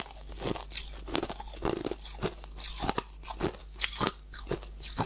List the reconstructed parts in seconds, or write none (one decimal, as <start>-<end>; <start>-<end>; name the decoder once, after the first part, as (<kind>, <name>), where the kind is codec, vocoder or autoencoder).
0.0-0.5 (codec, DAC); 3.6-5.1